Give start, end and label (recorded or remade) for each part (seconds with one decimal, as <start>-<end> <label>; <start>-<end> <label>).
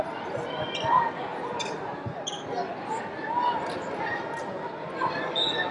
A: 0.0-5.7 recorded